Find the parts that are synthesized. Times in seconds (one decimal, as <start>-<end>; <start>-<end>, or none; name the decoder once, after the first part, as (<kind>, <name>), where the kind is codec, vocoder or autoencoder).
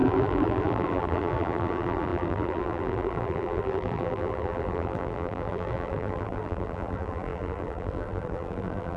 0.0-9.0 (vocoder, BigVGAN v2)